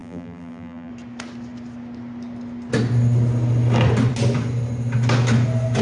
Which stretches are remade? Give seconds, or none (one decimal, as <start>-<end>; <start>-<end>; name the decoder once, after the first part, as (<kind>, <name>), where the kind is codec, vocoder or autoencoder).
0.0-0.9 (vocoder, BigVGAN v2)